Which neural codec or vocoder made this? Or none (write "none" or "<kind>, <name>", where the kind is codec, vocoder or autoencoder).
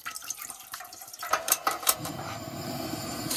vocoder, BigVGAN v2